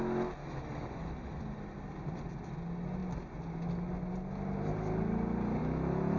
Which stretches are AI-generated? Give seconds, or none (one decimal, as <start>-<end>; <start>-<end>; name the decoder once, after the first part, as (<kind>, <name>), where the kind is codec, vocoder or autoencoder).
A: 0.4-1.4 (autoencoder, DAC-VAE); 5.6-6.2